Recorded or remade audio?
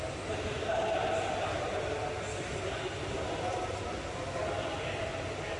recorded